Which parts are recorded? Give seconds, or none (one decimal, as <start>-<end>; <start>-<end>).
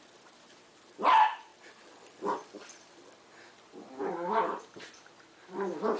1.5-4.1